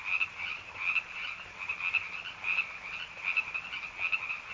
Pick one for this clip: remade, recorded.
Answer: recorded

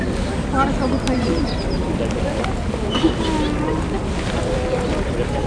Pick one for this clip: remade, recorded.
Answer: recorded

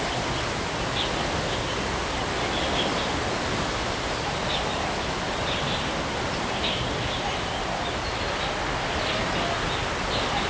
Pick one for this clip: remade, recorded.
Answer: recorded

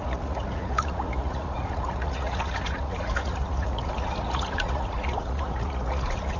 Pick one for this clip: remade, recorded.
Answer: remade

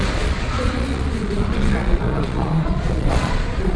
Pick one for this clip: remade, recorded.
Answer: remade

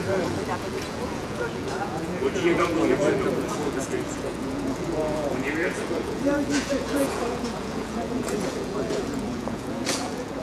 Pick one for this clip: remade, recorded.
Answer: remade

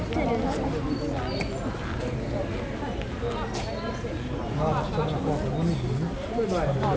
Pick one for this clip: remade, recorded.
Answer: recorded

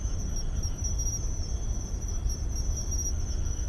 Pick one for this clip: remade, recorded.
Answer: recorded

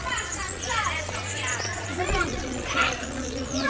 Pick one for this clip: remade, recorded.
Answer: remade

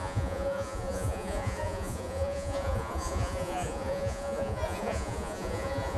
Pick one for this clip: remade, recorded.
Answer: remade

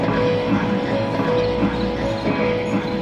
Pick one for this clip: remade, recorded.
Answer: recorded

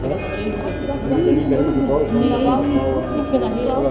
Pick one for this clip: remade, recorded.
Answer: recorded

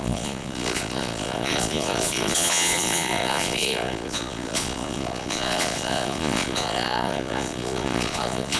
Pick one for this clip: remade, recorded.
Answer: remade